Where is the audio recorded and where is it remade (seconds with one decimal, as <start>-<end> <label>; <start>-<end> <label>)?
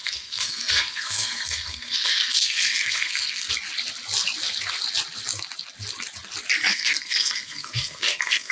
0.0-3.5 remade; 3.5-6.7 recorded; 6.7-8.5 remade